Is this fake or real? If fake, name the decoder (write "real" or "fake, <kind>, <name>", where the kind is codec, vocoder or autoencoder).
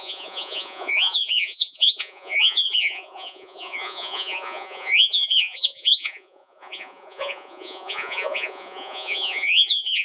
fake, vocoder, Vocos